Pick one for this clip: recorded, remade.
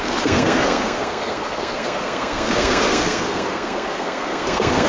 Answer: remade